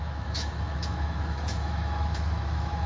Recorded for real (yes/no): no